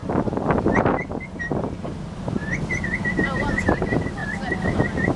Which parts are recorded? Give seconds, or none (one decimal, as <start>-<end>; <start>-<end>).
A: 0.0-1.4; 2.4-3.4